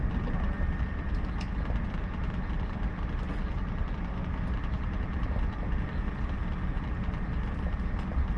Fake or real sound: real